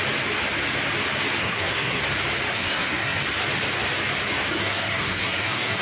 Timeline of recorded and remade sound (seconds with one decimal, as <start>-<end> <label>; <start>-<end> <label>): 0.0-1.4 recorded; 1.4-2.0 remade; 2.0-2.5 recorded; 2.5-3.2 remade; 3.2-4.6 recorded; 4.6-5.8 remade